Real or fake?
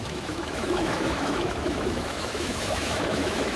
fake